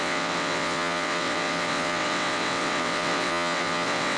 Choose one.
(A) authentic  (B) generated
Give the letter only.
B